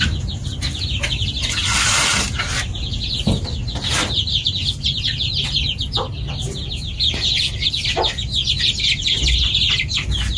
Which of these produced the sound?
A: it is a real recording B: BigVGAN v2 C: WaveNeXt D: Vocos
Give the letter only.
A